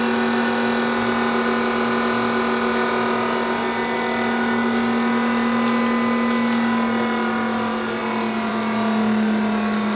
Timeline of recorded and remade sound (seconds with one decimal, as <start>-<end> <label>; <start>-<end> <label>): 0.0-10.0 recorded

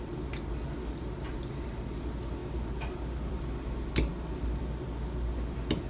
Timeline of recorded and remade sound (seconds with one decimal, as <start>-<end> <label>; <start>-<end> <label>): 0.0-5.9 recorded

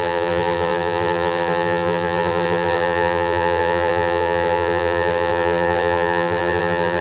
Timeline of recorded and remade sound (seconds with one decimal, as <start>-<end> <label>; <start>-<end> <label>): 0.0-7.0 remade